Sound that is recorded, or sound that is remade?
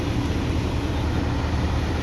recorded